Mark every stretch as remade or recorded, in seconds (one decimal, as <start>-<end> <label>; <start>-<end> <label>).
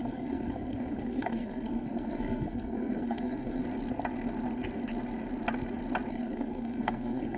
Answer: 0.0-3.6 remade; 3.6-6.1 recorded; 6.1-7.4 remade